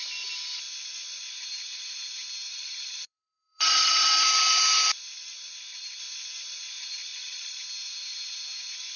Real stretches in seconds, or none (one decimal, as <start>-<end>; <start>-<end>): 0.0-2.5; 4.1-7.1; 7.6-9.0